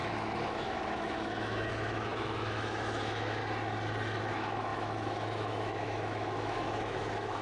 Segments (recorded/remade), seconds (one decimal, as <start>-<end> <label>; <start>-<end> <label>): 0.0-3.4 remade; 3.4-4.2 recorded; 4.2-7.4 remade